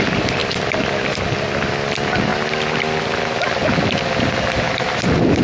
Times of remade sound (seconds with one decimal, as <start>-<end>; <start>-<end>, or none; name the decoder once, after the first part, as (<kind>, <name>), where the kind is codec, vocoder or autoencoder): none